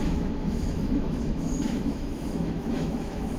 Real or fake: fake